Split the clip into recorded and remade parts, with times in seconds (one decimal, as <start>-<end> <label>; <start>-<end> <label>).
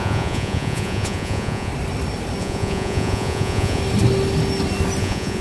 0.0-1.7 remade; 1.7-2.4 recorded; 2.4-3.8 remade; 3.8-5.0 recorded; 5.0-5.4 remade